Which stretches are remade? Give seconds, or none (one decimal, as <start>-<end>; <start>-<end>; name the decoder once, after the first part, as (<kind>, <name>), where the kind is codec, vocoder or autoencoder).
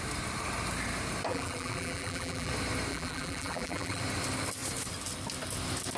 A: 1.3-2.5 (vocoder, BigVGAN v2); 2.9-4.0